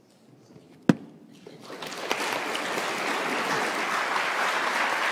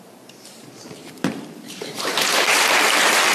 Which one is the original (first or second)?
first